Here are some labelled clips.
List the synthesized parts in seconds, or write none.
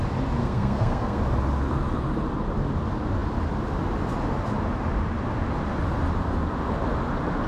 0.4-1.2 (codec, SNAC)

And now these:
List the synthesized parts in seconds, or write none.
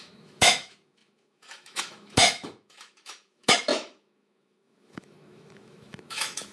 0.0-6.5 (autoencoder, DAC-VAE)